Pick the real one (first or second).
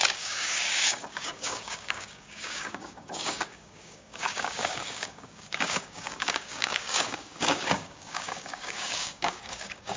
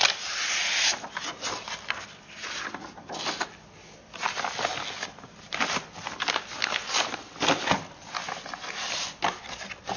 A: second